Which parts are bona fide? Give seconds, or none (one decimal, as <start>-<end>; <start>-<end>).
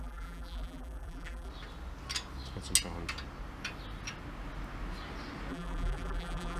1.5-5.5